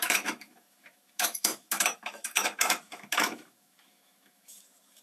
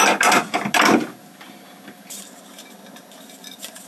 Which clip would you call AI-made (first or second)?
first